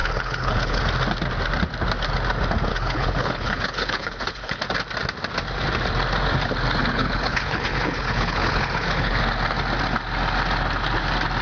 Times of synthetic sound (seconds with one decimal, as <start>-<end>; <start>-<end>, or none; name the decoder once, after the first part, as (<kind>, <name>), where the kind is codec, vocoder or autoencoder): 0.0-0.8 (codec, HILCodec); 2.7-4.6; 6.8-9.2